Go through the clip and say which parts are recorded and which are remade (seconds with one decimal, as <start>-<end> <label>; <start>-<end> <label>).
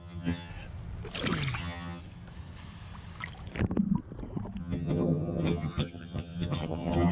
0.0-0.5 remade; 0.5-1.6 recorded; 1.6-2.0 remade; 2.0-4.6 recorded; 4.6-7.1 remade